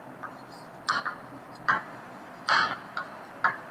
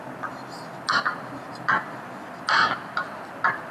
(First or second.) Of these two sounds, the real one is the second